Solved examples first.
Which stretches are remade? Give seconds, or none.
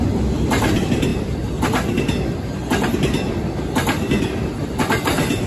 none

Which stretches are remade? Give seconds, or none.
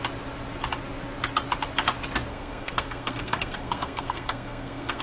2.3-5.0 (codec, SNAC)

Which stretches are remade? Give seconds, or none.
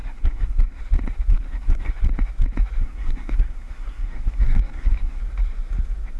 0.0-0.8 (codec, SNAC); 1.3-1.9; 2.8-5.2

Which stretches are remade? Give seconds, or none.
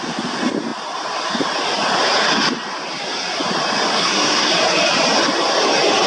3.9-4.5 (codec, SNAC)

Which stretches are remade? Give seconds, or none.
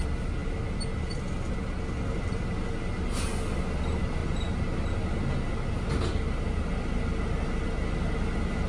none